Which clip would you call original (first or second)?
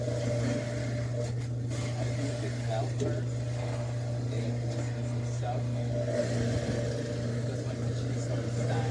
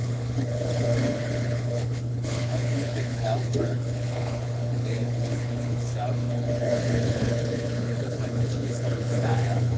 first